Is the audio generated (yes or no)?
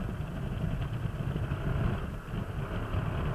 no